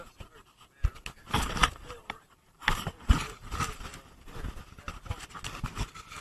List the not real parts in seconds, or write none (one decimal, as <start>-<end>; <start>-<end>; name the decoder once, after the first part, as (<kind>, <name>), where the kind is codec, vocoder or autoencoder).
1.6-5.3 (vocoder, BigVGAN v2)